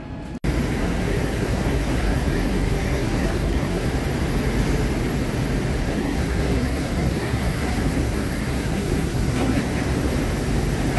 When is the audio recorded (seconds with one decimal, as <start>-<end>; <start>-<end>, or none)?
0.0-0.8; 3.9-5.8; 9.6-11.0

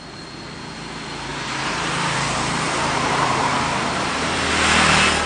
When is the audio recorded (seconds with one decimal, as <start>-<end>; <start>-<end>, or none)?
0.0-1.3; 4.5-5.3

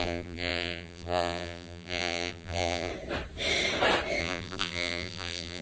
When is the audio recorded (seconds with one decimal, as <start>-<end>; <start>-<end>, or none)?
2.9-4.2

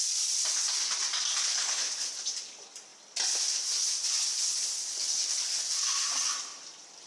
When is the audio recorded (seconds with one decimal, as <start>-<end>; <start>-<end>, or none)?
0.0-1.3; 1.8-7.1

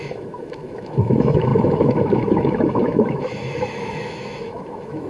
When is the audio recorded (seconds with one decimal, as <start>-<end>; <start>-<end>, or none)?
none